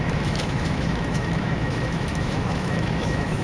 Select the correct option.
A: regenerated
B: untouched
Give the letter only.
A